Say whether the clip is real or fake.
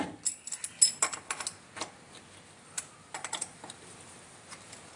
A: real